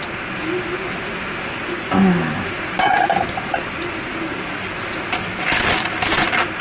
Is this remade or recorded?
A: recorded